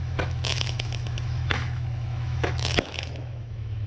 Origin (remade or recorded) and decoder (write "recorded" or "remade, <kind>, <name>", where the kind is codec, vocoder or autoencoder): remade, autoencoder, DAC-VAE